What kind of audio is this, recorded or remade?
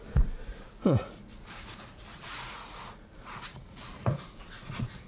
remade